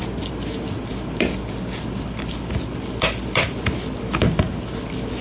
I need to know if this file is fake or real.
real